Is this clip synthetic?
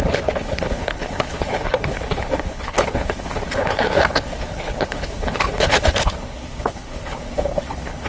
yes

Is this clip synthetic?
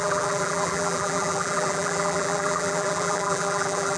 yes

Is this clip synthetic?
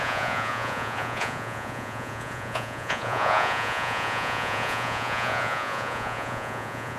yes